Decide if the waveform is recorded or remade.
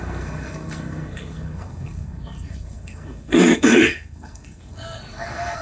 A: remade